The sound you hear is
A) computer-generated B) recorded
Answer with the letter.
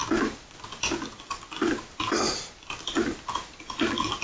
B